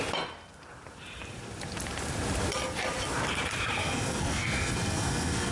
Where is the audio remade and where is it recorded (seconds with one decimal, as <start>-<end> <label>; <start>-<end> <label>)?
0.0-3.8 recorded; 3.8-5.5 remade